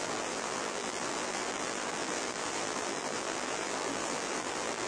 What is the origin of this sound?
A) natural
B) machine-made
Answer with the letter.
B